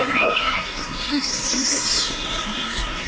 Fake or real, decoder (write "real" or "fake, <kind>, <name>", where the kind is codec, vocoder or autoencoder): fake, codec, SNAC